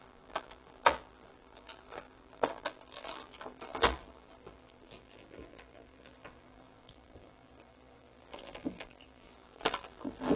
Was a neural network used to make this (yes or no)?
yes